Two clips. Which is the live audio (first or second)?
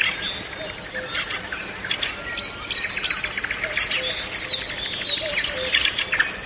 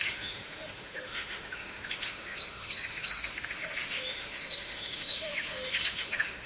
first